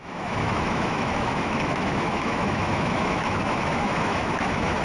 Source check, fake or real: fake